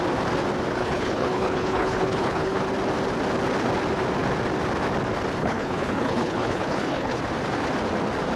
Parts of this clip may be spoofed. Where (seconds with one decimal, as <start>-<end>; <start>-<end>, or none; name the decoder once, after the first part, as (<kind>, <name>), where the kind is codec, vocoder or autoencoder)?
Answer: 0.8-2.6 (codec, HILCodec); 5.4-7.2